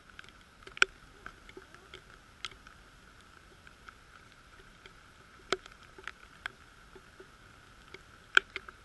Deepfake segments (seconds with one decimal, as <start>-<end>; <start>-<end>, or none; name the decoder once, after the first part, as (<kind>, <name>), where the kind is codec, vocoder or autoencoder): 0.0-0.8 (vocoder, BigVGAN v2); 4.0-6.2; 8.3-8.8